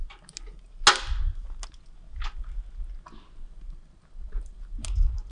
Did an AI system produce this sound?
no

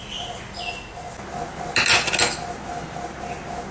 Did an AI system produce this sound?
no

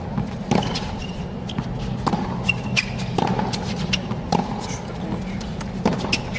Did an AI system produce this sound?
no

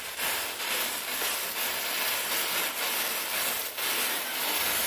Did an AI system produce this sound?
no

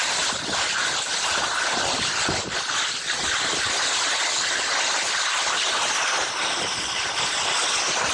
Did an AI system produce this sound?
no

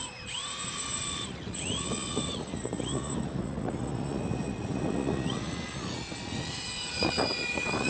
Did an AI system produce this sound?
yes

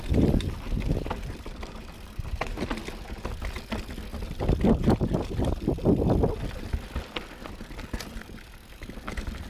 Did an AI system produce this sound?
no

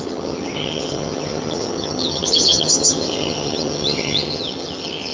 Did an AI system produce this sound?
yes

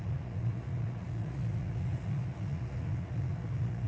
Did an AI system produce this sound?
yes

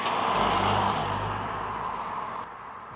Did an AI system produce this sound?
no